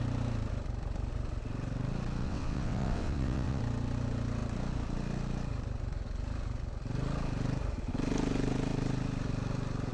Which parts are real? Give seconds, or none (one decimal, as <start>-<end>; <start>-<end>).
0.0-2.2; 3.6-9.9